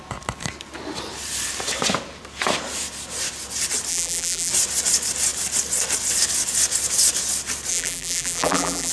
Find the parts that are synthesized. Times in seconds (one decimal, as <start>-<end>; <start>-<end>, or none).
3.9-4.5; 7.7-8.9